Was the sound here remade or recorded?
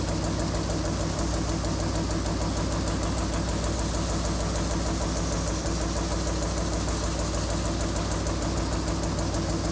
recorded